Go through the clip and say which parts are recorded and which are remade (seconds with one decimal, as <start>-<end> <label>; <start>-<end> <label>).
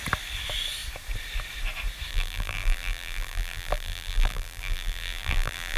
0.0-2.1 recorded; 2.1-5.8 remade